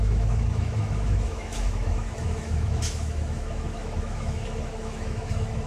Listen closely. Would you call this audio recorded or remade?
remade